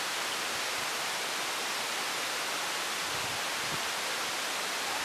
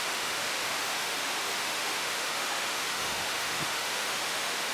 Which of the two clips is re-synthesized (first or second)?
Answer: second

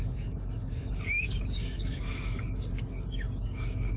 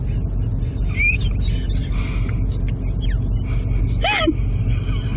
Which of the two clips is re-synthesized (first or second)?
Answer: first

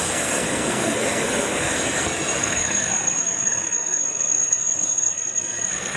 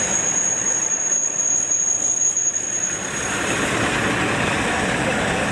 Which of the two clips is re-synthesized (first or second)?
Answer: first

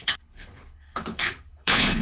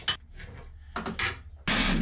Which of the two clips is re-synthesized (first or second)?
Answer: first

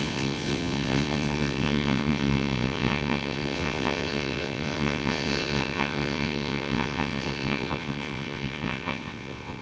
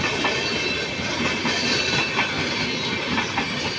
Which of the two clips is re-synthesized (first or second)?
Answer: first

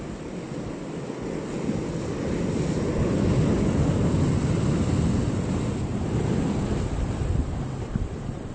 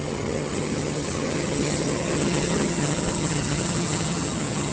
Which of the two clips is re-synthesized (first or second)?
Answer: second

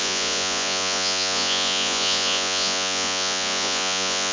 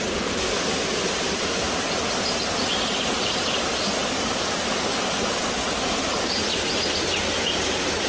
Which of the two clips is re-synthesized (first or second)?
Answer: first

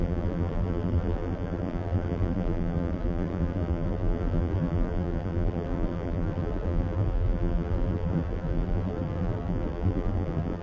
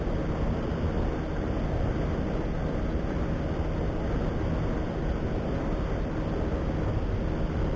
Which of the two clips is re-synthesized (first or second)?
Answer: first